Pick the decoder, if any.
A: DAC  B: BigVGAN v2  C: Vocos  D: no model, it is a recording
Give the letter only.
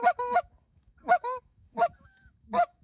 A